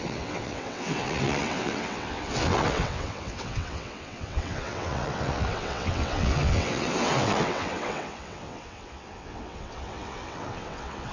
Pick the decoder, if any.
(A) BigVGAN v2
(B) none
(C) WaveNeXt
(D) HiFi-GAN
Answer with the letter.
C